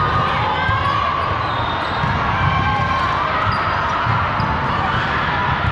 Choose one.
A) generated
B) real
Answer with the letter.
B